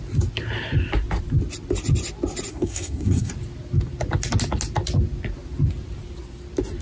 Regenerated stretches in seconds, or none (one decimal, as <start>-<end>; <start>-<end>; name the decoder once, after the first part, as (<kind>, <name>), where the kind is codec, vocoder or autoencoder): 2.5-3.3 (codec, SNAC)